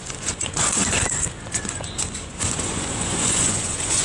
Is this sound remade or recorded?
remade